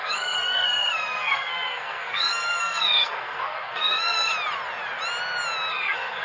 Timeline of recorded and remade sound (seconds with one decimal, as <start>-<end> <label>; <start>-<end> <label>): 0.0-4.3 remade; 4.3-5.7 recorded; 5.7-6.2 remade

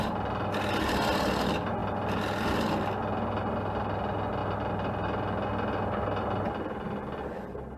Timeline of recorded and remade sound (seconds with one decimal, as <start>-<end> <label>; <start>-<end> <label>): 0.0-7.8 recorded

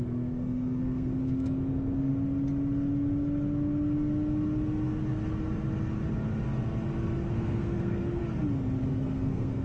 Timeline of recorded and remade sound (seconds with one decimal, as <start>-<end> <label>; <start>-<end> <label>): 0.0-2.1 remade; 2.1-7.3 recorded; 7.3-8.2 remade; 8.2-8.9 recorded; 8.9-9.6 remade

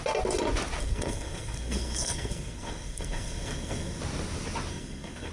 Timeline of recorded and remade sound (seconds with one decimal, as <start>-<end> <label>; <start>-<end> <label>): 0.0-0.8 recorded; 0.8-4.0 remade; 4.0-4.7 recorded; 4.7-5.3 remade

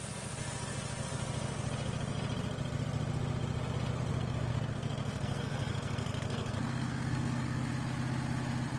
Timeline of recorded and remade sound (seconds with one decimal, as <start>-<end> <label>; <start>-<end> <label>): 0.0-4.1 recorded; 4.1-7.7 remade; 7.7-8.8 recorded

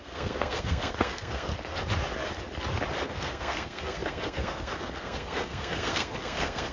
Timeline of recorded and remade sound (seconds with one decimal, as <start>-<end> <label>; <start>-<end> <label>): 0.0-1.5 remade; 1.5-3.0 recorded; 3.0-6.7 remade

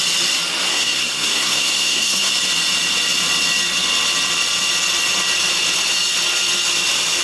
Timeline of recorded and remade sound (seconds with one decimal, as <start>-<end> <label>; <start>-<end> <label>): 0.0-0.7 recorded; 0.7-2.3 remade; 2.3-7.2 recorded

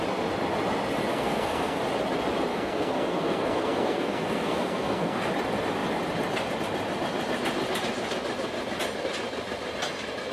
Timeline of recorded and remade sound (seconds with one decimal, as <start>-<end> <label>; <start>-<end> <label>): 0.0-1.1 recorded; 1.1-1.8 remade; 1.8-2.5 recorded; 2.5-5.3 remade; 5.3-10.3 recorded